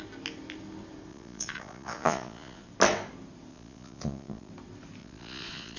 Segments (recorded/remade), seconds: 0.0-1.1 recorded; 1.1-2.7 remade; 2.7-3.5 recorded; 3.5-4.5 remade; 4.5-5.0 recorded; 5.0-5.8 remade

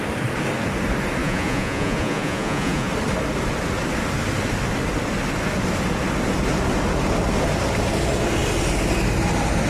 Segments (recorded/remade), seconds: 0.0-1.2 recorded; 1.2-2.9 remade; 2.9-9.7 recorded